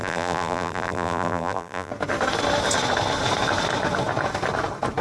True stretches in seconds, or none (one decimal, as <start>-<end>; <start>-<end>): 1.9-5.0